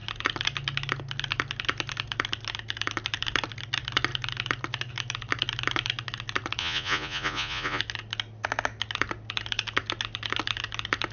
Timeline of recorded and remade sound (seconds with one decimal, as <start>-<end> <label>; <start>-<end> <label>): 0.0-6.6 recorded; 6.6-7.8 remade; 7.8-11.1 recorded